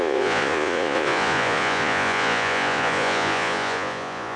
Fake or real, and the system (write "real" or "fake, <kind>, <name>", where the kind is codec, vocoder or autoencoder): fake, vocoder, Vocos